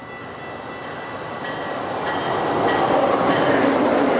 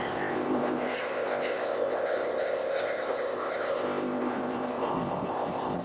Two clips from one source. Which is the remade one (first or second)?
second